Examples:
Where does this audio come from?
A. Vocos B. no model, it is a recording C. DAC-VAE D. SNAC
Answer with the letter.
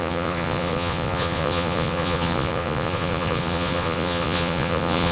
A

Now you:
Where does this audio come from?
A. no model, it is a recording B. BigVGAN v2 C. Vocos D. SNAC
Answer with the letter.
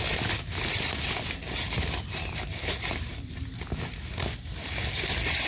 A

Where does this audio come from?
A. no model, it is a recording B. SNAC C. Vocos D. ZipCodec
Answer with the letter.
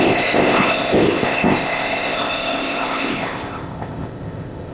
D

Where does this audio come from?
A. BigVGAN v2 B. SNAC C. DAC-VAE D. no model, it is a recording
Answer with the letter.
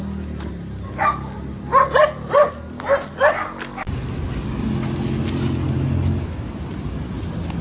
D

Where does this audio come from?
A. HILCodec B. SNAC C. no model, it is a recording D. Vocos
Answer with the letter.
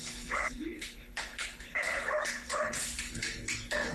A